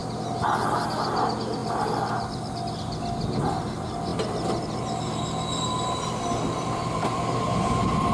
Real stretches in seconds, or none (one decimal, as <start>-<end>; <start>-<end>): 0.0-8.1